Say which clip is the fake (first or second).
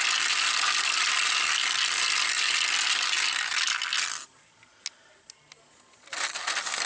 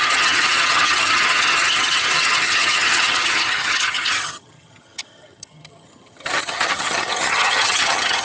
second